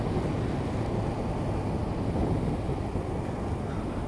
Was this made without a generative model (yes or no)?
yes